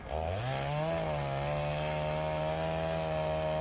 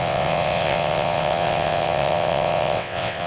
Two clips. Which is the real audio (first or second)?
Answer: first